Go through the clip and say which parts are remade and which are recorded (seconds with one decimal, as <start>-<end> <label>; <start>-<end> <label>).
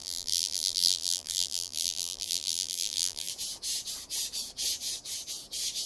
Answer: 0.0-3.3 remade; 3.3-5.9 recorded